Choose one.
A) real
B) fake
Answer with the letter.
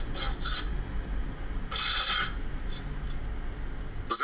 A